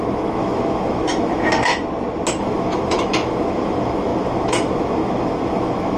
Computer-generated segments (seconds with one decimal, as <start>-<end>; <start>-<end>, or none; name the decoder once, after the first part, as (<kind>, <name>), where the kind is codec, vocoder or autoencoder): 0.0-1.7 (autoencoder, DAC-VAE); 2.4-6.0